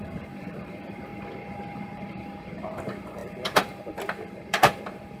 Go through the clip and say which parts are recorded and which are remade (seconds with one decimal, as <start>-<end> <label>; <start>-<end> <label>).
0.0-1.1 remade; 1.1-1.8 recorded; 1.8-5.2 remade